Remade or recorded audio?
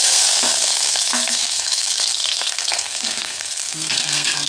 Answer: remade